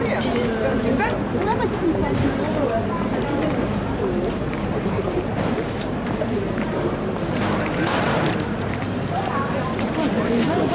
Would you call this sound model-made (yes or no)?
yes